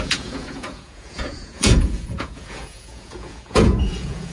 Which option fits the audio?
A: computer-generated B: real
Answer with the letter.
A